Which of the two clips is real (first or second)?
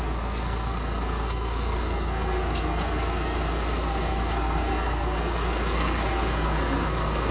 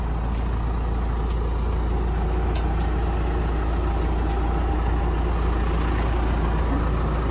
second